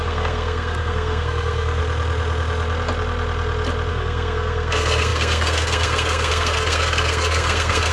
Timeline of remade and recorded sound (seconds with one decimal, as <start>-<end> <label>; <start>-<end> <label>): 0.0-1.8 remade; 1.8-3.9 recorded; 3.9-7.9 remade